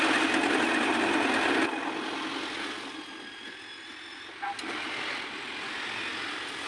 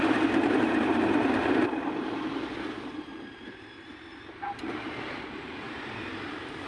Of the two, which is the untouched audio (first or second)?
first